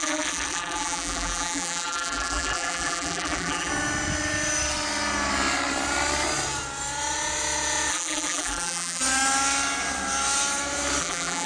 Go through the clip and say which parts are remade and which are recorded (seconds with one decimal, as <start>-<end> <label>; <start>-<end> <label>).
0.0-3.7 remade; 3.7-7.9 recorded; 7.9-9.0 remade; 9.0-11.0 recorded; 11.0-11.5 remade